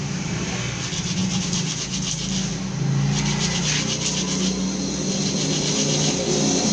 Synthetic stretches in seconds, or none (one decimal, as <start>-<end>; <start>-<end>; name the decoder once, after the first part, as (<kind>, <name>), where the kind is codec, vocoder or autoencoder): none